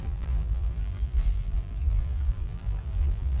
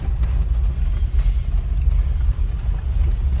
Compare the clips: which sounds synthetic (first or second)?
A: first